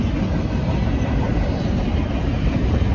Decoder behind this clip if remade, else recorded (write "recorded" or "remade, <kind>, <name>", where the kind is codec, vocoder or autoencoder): recorded